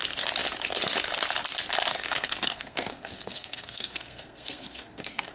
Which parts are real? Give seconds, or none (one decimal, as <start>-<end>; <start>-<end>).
0.0-1.9